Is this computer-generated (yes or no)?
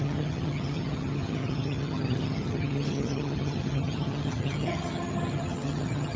yes